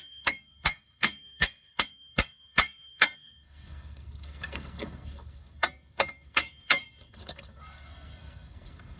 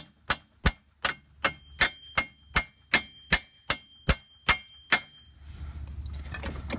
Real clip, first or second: second